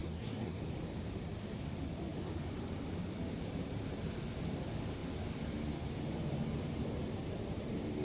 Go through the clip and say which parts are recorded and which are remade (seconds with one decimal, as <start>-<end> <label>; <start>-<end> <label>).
0.0-0.6 remade; 0.6-8.0 recorded